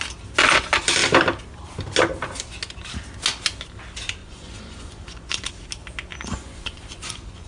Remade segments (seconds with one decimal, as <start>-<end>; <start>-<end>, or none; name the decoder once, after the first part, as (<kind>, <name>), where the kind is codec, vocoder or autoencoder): 4.2-5.5 (vocoder, Vocos); 6.1-7.5